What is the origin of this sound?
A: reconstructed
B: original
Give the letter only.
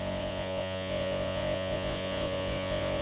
A